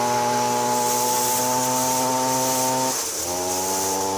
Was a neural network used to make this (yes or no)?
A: no